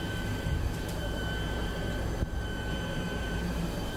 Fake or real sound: fake